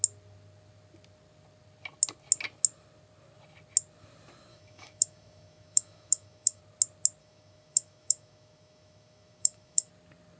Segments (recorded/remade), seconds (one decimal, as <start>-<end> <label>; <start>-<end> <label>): 0.0-4.5 recorded; 4.5-6.6 remade; 6.6-7.2 recorded; 7.2-9.9 remade; 9.9-10.4 recorded